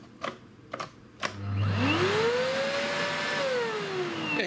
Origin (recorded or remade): recorded